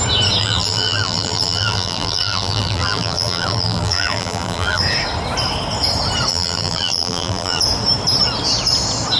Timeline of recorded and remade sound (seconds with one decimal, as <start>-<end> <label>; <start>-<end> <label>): 0.0-0.4 recorded; 0.4-4.8 remade; 4.8-6.3 recorded; 6.3-7.6 remade; 7.6-9.2 recorded